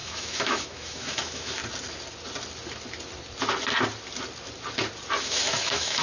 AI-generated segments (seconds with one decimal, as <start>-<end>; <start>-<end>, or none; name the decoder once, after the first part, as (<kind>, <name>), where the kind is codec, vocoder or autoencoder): 0.0-1.6 (autoencoder, DAC-VAE); 5.2-6.0

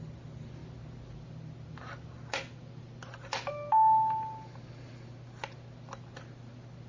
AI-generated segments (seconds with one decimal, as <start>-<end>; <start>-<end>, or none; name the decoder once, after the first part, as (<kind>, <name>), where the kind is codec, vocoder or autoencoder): none

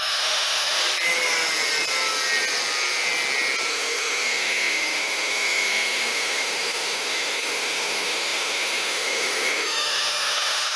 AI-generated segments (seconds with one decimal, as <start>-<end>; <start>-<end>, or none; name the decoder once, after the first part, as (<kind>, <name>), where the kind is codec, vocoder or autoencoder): 0.0-0.8 (autoencoder, DAC-VAE); 3.7-10.8

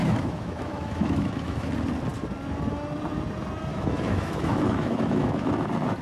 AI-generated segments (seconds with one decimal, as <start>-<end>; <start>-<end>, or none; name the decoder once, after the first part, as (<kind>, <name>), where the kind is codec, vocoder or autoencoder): 0.0-1.7 (autoencoder, DAC-VAE); 3.7-5.5

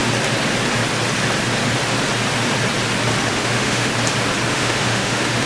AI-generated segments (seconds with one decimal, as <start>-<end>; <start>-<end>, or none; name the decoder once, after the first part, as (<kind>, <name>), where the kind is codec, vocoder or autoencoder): 3.3-3.9 (autoencoder, DAC-VAE); 4.5-5.5